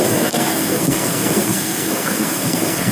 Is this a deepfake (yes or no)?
yes